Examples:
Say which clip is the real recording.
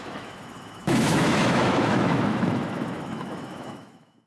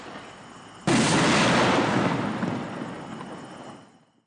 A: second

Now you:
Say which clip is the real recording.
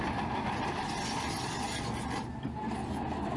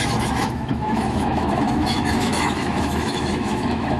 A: first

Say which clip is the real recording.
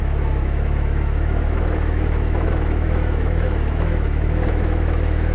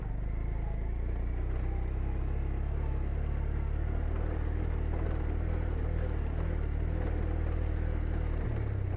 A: second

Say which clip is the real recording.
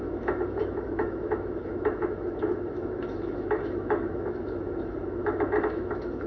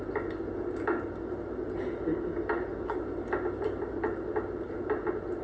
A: second